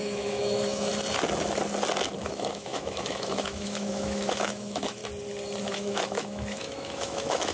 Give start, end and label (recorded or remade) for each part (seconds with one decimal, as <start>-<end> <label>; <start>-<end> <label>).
0.0-0.9 remade; 0.9-2.2 recorded; 2.2-5.0 remade; 5.0-5.6 recorded; 5.6-7.5 remade